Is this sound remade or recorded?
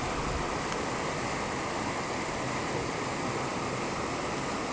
recorded